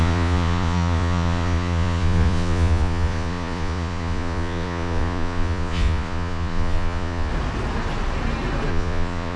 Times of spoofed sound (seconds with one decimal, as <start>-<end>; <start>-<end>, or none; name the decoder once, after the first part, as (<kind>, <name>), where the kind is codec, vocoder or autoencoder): 0.0-7.3 (vocoder, Vocos); 8.7-9.4